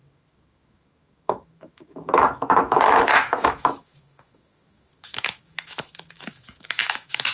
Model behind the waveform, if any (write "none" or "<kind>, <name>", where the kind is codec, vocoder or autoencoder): autoencoder, DAC-VAE